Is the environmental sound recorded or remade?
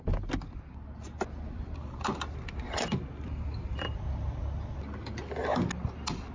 recorded